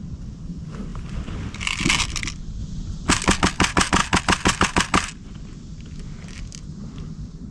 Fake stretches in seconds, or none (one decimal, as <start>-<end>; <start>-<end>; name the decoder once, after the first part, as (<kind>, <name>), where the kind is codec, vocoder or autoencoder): none

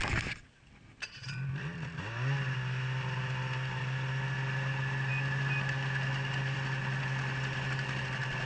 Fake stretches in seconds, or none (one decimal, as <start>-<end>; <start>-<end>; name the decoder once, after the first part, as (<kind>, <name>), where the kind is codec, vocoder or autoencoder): none

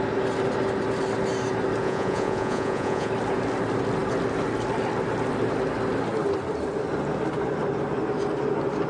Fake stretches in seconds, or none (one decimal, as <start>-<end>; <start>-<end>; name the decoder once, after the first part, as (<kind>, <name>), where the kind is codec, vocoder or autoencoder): 1.8-3.1 (vocoder, Vocos)

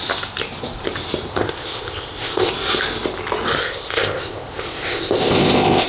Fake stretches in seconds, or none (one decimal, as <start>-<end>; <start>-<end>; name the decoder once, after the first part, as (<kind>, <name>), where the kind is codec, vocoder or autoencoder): 1.3-2.5 (codec, ZipCodec); 3.6-5.9

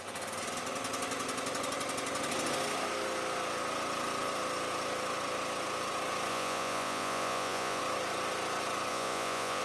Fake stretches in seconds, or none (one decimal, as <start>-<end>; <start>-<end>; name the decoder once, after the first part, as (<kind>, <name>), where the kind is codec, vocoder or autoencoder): 6.3-7.8 (vocoder, Vocos); 8.9-9.6

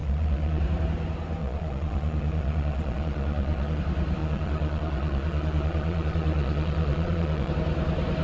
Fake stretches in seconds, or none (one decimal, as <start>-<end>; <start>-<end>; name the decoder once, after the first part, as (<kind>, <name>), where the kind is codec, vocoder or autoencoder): 0.0-0.6 (vocoder, Vocos); 1.4-3.8; 4.2-7.5

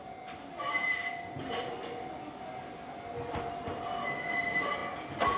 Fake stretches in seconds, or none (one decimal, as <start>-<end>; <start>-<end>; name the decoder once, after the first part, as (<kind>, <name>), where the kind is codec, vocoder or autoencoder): none